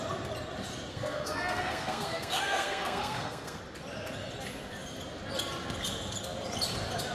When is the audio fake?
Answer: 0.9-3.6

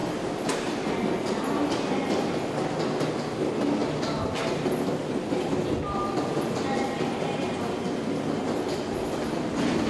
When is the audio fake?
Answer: none